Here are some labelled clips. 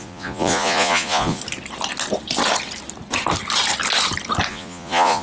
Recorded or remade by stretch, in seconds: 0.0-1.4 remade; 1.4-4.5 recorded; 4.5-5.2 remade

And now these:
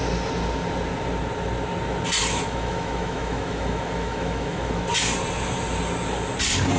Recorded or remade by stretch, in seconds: 0.0-2.2 recorded; 2.2-4.9 remade; 4.9-6.8 recorded